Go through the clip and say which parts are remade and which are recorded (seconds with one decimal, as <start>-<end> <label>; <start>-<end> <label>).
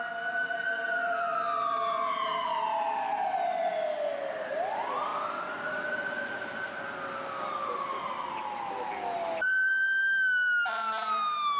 0.0-11.6 recorded